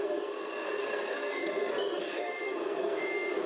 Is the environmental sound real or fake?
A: fake